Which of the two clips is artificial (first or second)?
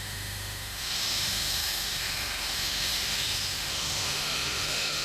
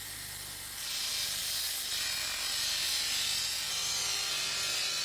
first